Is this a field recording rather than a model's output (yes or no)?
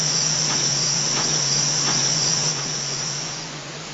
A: no